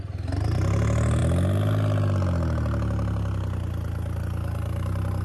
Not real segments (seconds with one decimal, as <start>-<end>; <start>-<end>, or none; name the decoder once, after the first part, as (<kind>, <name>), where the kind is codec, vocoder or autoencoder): none